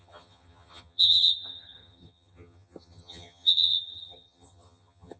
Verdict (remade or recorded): remade